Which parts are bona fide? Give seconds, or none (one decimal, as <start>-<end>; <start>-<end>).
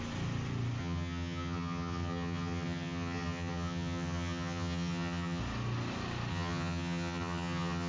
0.0-0.8; 5.4-6.3